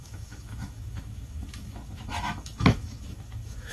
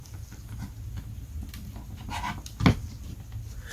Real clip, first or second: second